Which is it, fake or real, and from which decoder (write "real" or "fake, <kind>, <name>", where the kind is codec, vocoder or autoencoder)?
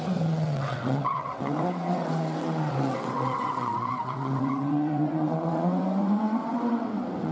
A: fake, vocoder, WaveNeXt